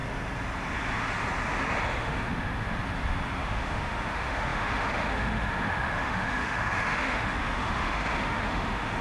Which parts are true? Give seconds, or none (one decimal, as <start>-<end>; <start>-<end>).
0.0-2.0; 2.8-3.4